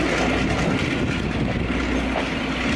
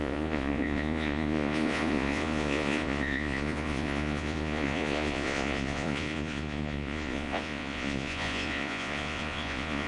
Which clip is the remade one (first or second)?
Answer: second